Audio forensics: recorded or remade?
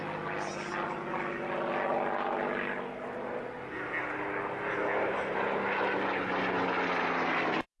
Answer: recorded